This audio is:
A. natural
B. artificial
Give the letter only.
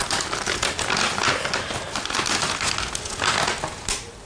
A